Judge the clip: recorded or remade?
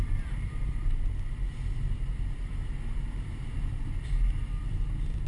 remade